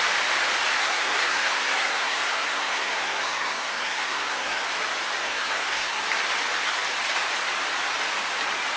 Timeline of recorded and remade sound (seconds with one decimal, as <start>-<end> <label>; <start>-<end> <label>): 0.0-0.8 recorded; 0.8-4.6 remade; 4.6-5.2 recorded; 5.2-6.0 remade; 6.0-8.8 recorded